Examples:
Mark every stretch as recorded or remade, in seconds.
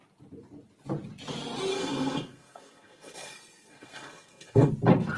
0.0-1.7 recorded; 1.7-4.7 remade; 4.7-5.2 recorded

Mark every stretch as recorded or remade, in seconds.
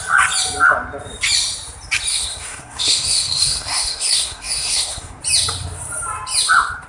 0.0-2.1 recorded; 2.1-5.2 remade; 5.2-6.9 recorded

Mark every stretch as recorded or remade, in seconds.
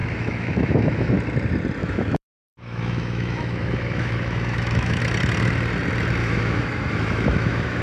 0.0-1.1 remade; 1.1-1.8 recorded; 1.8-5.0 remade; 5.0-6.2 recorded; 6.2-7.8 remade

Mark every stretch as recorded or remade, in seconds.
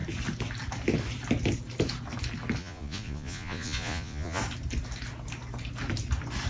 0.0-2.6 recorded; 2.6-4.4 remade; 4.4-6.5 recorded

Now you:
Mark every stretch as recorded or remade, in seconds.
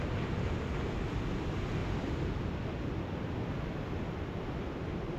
0.0-5.2 recorded